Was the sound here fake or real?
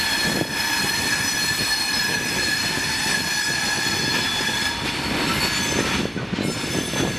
real